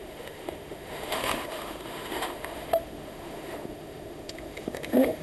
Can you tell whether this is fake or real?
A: fake